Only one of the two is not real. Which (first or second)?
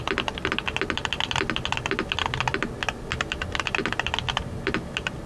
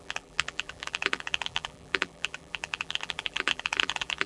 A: second